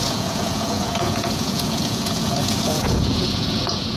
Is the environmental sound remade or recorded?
remade